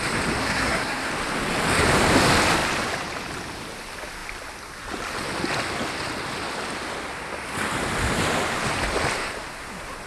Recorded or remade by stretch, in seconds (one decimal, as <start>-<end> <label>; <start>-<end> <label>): 0.0-0.4 recorded; 0.4-1.1 remade; 1.1-10.1 recorded